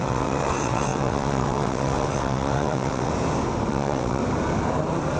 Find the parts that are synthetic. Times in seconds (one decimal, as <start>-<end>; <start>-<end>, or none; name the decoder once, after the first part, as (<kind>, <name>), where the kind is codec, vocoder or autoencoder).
0.0-3.1 (vocoder, WaveNeXt); 3.7-4.2